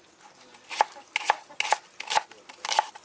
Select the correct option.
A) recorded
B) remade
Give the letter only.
A